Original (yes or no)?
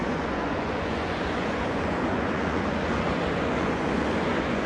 no